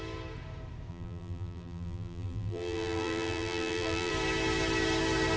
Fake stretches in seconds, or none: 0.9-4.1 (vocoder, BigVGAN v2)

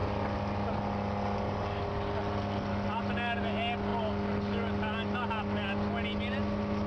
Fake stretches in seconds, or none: none

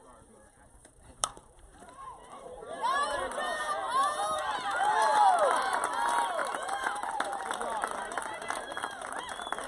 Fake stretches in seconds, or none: 0.0-3.3 (vocoder, BigVGAN v2); 6.4-7.4

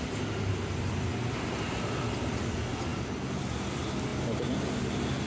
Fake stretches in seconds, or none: none

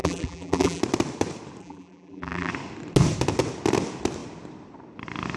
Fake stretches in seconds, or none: 0.0-0.8 (vocoder, BigVGAN v2); 1.6-2.5

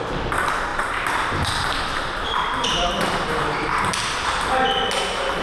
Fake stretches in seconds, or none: 0.7-3.9 (vocoder, BigVGAN v2)